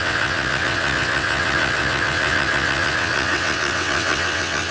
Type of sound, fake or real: fake